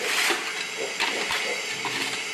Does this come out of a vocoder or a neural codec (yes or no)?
no